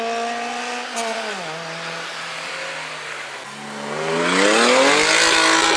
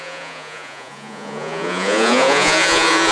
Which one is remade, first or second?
second